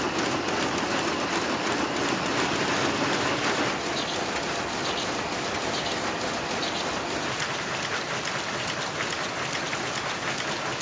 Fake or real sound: real